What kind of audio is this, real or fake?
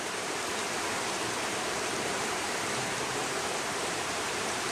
fake